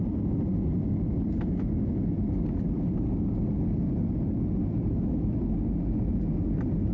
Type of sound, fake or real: real